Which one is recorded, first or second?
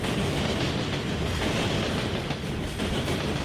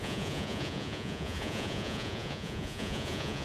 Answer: first